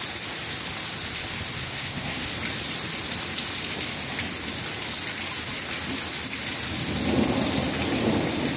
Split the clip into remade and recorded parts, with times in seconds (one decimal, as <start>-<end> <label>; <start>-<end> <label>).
0.0-1.6 recorded; 1.6-2.3 remade; 2.3-8.6 recorded